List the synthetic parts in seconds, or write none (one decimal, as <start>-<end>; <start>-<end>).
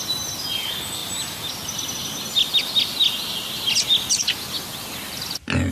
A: 1.0-1.9